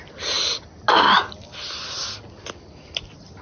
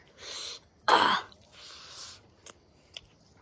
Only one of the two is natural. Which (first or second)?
first